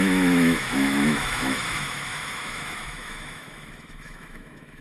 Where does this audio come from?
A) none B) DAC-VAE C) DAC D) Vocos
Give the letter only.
B